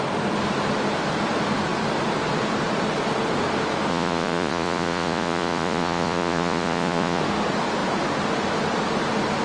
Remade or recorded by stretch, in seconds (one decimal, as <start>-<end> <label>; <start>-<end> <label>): 0.0-3.9 recorded; 3.9-7.2 remade; 7.2-9.4 recorded